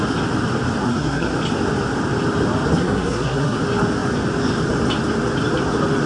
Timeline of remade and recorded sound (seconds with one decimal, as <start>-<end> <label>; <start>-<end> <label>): 0.0-0.8 recorded; 0.8-1.3 remade; 1.3-2.8 recorded; 2.8-3.6 remade; 3.6-6.1 recorded